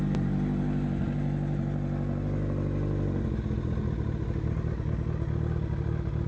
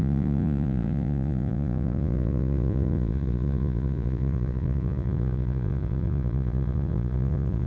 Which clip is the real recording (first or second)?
first